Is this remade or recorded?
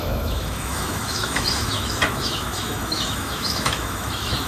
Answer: remade